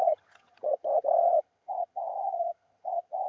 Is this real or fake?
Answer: fake